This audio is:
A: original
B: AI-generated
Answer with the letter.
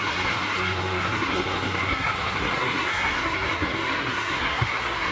B